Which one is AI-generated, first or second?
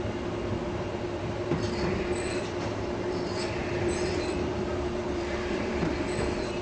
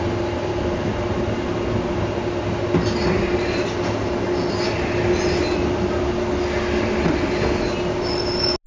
first